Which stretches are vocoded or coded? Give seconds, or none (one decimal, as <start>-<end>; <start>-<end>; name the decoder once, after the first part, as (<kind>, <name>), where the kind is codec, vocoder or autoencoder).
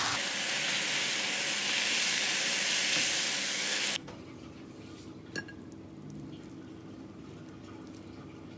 3.4-4.1 (codec, SNAC)